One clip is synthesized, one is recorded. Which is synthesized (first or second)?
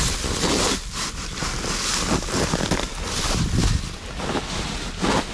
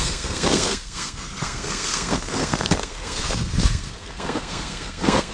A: second